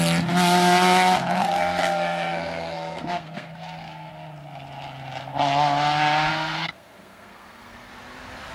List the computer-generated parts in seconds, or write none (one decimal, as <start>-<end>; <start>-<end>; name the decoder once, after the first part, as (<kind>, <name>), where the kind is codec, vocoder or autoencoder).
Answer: 1.4-4.1 (codec, SNAC); 6.3-7.9